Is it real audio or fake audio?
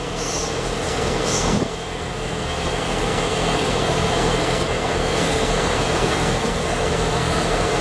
fake